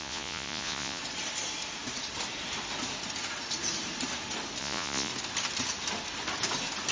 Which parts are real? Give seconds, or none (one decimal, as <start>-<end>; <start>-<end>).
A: 1.0-4.6; 5.1-6.9